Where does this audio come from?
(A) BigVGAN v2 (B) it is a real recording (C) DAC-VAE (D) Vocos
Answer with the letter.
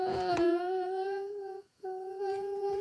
D